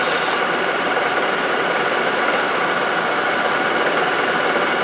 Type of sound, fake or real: fake